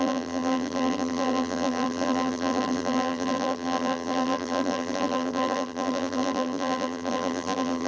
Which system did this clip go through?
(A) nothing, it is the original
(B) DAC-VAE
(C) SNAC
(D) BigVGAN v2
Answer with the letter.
D